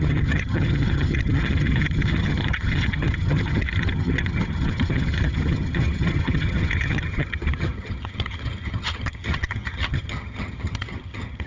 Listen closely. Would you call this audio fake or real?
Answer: fake